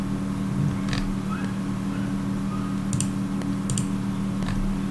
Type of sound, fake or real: real